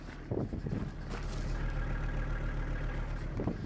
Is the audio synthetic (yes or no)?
no